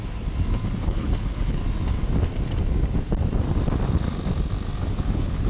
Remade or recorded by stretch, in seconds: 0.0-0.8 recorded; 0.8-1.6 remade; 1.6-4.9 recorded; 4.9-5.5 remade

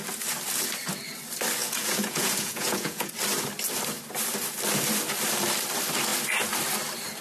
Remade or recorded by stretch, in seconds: 0.0-1.6 recorded; 1.6-3.1 remade; 3.1-7.2 recorded